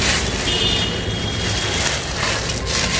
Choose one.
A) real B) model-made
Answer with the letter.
A